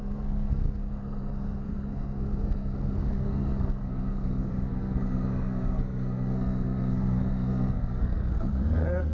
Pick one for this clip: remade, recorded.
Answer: remade